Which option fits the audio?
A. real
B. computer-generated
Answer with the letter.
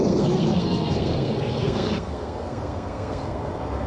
B